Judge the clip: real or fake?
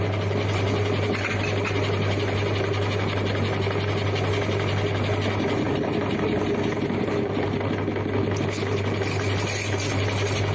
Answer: real